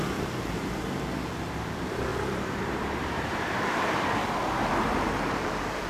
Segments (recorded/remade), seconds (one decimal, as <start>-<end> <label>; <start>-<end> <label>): 0.0-2.1 remade; 2.1-2.6 recorded; 2.6-5.9 remade